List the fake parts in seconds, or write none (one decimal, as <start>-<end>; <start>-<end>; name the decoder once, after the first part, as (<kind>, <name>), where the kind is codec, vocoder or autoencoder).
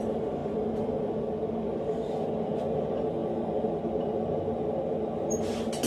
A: none